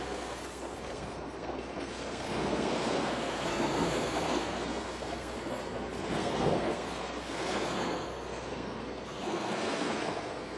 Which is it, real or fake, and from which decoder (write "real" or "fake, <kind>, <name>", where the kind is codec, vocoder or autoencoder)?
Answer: fake, codec, SNAC